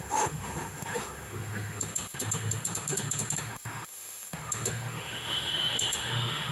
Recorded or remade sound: remade